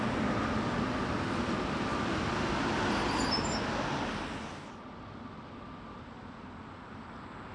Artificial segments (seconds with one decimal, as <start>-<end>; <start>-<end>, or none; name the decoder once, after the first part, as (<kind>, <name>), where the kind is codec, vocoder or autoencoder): none